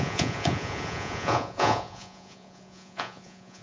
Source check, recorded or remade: remade